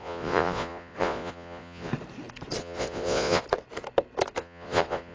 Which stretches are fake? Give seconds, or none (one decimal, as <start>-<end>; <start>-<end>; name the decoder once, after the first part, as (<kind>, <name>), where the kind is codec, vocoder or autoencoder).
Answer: 0.0-1.9 (vocoder, Vocos); 2.6-3.4; 4.4-5.1